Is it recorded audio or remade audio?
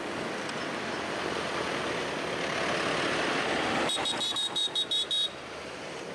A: remade